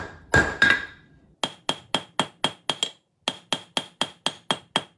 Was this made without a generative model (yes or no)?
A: yes